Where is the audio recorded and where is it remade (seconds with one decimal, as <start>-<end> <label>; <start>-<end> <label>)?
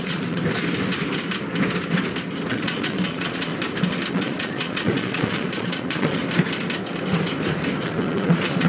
0.0-0.4 remade; 0.4-2.5 recorded; 2.5-3.5 remade; 3.5-4.1 recorded; 4.1-6.2 remade; 6.2-7.8 recorded; 7.8-8.7 remade